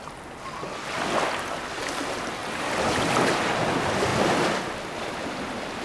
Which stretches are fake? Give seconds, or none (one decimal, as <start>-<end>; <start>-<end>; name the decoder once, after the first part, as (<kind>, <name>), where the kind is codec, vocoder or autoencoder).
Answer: none